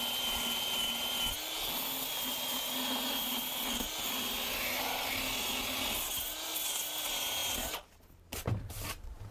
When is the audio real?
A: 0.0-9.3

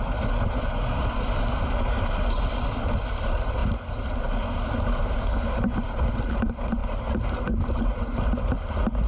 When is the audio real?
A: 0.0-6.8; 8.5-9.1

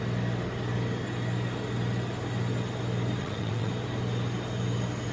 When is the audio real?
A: 0.0-3.2; 3.7-5.1

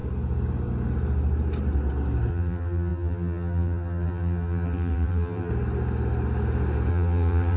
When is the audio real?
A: 0.0-2.3; 5.5-6.9